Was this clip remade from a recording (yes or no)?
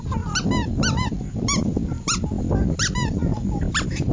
no